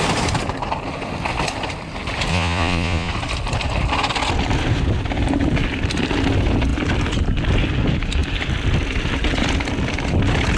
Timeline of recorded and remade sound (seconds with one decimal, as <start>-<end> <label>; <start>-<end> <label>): 0.0-2.3 recorded; 2.3-3.1 remade; 3.1-10.6 recorded